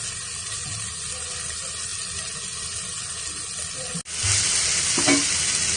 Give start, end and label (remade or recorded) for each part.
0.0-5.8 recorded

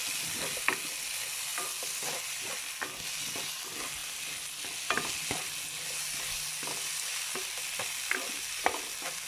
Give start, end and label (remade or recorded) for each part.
0.0-9.3 recorded

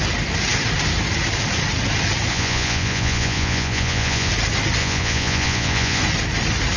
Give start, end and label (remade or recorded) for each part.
0.0-2.3 recorded; 2.3-4.3 remade; 4.3-4.8 recorded; 4.8-6.0 remade; 6.0-6.8 recorded

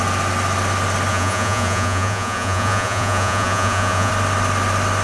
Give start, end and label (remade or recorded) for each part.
0.0-1.1 recorded; 1.1-4.1 remade; 4.1-5.0 recorded

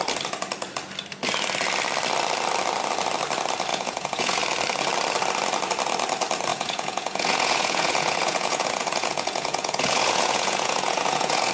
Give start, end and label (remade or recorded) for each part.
0.0-3.7 recorded; 3.7-4.4 remade; 4.4-6.5 recorded; 6.5-11.5 remade

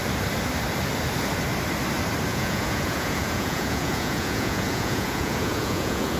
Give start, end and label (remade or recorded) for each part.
0.0-2.3 recorded; 2.3-6.2 remade